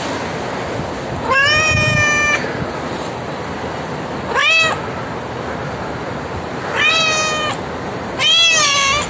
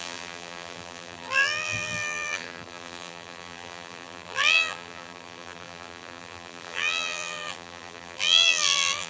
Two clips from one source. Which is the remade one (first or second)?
second